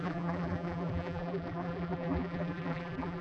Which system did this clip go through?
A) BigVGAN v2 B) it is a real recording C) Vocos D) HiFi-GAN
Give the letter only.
A